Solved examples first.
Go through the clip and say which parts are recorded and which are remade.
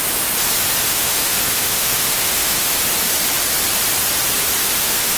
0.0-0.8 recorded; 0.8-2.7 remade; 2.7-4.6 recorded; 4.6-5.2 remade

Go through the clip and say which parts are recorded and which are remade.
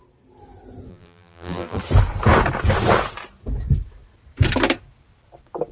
0.0-0.9 recorded; 0.9-1.8 remade; 1.8-5.7 recorded